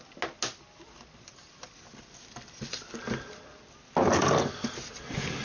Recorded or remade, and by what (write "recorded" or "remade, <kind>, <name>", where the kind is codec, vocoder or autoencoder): recorded